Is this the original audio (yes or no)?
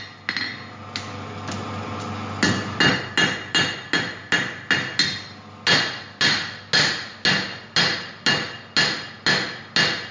yes